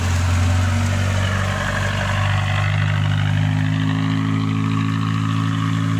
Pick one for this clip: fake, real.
real